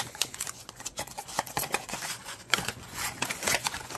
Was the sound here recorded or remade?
remade